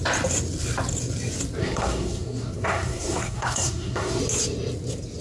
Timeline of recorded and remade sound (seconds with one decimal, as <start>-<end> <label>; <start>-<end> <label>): 0.0-1.6 recorded; 1.6-4.2 remade; 4.2-5.2 recorded